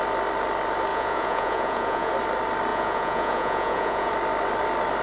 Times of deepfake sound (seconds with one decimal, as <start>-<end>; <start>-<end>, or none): 0.9-2.1; 2.7-4.1